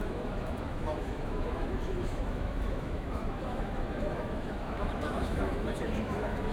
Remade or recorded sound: remade